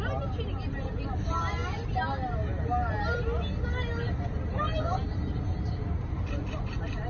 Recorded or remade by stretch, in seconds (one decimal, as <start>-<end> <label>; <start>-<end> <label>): 0.0-7.1 recorded